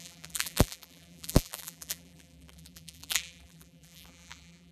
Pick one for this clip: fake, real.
fake